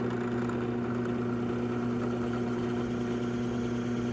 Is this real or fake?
real